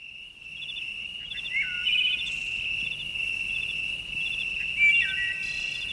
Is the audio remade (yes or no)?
no